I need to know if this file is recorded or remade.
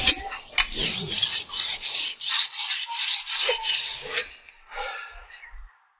recorded